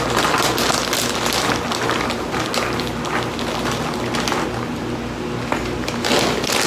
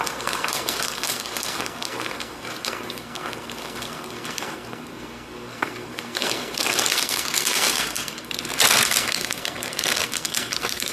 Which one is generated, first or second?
second